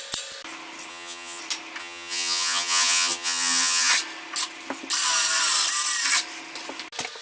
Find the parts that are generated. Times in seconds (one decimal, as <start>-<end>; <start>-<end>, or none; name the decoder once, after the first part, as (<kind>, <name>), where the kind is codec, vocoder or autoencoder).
0.9-1.4 (vocoder, HiFi-GAN); 1.8-3.9